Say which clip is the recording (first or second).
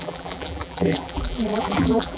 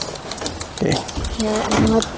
second